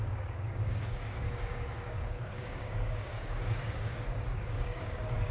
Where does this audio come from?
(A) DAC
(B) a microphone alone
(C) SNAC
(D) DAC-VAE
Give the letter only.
A